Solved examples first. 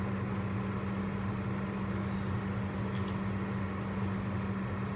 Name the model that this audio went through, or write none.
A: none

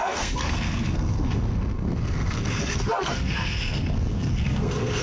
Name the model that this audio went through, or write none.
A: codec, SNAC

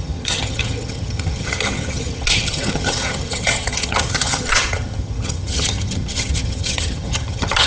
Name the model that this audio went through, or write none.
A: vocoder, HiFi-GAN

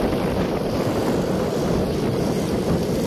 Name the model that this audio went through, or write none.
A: vocoder, BigVGAN v2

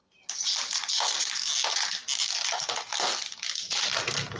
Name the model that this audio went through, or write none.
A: none